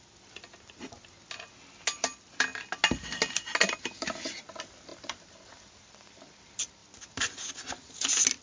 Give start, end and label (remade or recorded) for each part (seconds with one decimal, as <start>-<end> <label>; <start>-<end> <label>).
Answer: 0.0-4.9 recorded; 4.9-5.7 remade; 5.7-6.8 recorded; 6.8-7.5 remade; 7.5-8.4 recorded